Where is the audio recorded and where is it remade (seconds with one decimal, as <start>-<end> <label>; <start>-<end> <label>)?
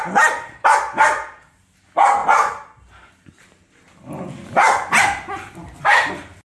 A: 0.0-6.5 recorded